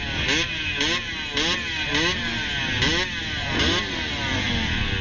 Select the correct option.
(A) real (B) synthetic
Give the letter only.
A